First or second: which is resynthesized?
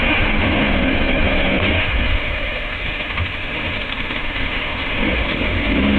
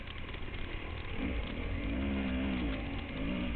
first